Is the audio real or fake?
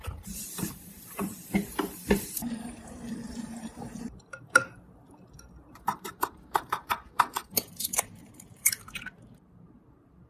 fake